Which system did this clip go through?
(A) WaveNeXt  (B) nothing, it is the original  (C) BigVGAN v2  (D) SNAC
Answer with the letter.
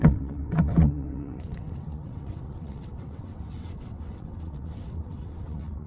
A